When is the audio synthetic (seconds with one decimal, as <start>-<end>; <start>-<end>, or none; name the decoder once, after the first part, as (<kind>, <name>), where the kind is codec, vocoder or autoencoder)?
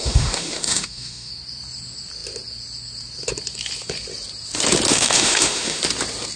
0.0-1.3 (autoencoder, DAC-VAE); 4.9-5.8